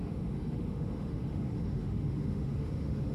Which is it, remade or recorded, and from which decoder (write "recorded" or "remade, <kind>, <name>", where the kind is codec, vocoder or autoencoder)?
remade, autoencoder, DAC-VAE